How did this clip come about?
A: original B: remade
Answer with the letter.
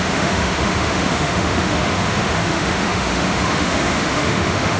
B